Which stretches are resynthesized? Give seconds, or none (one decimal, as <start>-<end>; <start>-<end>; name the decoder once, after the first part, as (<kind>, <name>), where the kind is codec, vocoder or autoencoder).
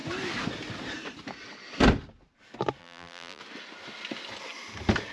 2.8-3.4 (vocoder, BigVGAN v2)